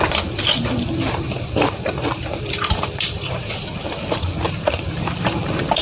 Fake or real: fake